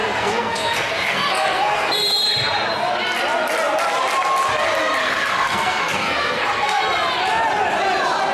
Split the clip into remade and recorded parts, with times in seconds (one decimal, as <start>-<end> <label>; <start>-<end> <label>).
0.0-1.9 remade; 1.9-5.0 recorded; 5.0-6.8 remade; 6.8-8.3 recorded